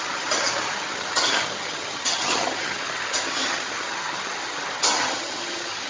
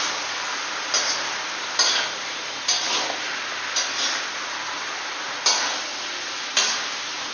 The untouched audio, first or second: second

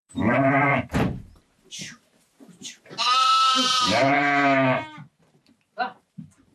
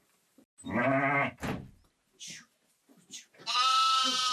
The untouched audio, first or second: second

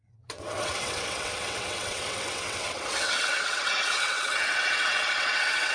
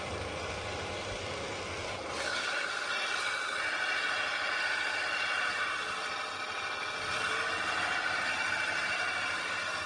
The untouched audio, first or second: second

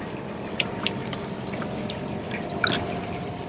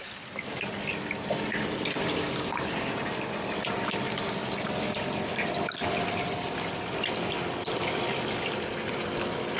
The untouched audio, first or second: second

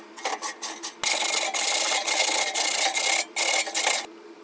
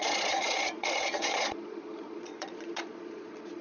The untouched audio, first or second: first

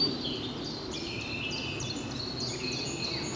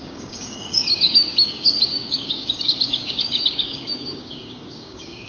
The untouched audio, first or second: first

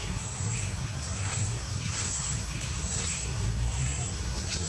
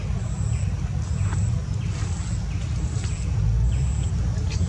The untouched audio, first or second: second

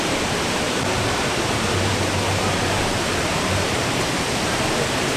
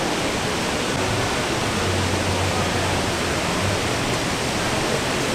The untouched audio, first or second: second